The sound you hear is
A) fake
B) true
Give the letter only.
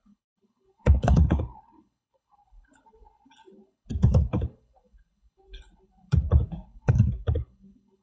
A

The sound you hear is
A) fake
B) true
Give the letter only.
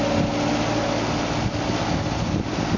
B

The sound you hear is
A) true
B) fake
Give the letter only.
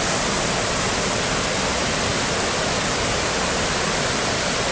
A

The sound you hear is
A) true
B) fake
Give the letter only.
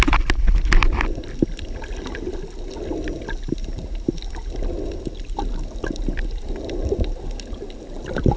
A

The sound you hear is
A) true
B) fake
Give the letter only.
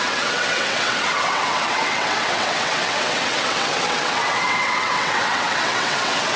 B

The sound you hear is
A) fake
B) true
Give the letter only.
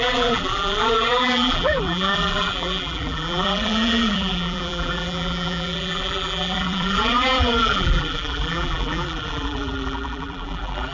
A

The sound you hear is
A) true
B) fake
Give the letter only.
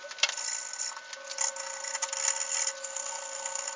A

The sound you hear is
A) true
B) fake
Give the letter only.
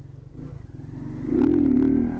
A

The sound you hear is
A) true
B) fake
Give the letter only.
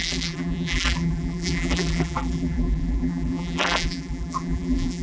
B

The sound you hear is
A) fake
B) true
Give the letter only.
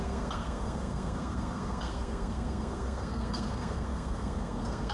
A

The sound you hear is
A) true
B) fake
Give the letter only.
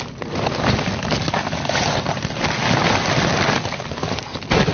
A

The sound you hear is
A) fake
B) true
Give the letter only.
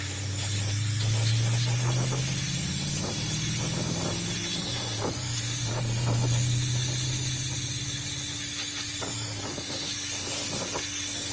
B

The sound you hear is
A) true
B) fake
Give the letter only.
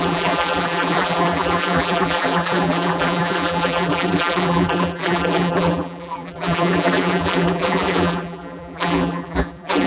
B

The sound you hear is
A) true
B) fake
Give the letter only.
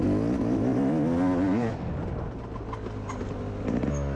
A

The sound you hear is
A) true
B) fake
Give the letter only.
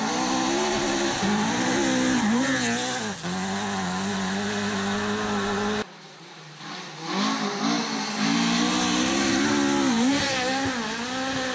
A